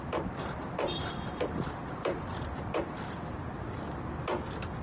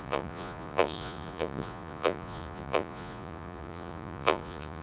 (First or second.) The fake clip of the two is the second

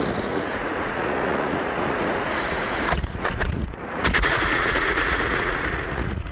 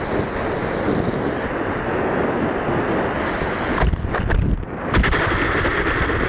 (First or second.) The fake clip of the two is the first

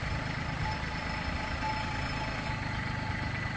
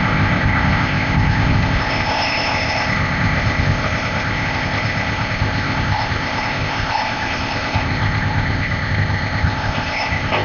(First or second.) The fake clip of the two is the second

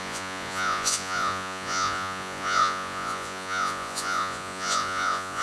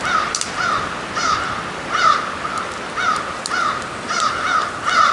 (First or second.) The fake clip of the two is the first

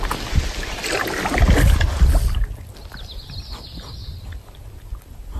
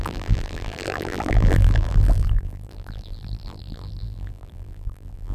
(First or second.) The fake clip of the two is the second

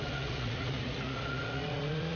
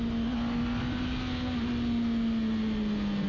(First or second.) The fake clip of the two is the first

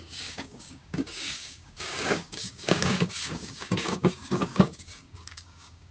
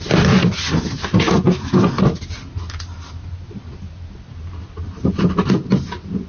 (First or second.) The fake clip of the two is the first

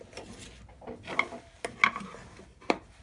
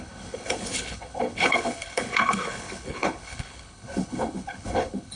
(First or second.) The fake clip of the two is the second